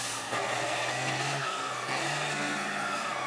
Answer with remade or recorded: remade